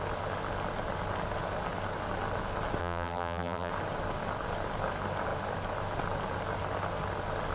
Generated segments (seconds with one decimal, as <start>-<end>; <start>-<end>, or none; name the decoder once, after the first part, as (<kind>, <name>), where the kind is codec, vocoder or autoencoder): 2.8-3.7 (vocoder, BigVGAN v2)